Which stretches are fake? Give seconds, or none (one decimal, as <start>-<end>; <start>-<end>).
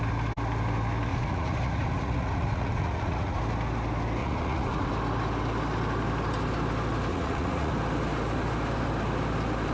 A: 1.1-3.4; 4.2-4.9; 7.1-7.7